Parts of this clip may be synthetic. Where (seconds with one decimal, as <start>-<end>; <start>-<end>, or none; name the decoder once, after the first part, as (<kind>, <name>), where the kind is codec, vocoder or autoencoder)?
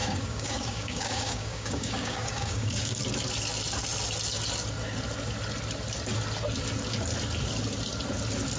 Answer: 0.0-3.0 (codec, DAC)